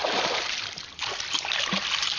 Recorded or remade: recorded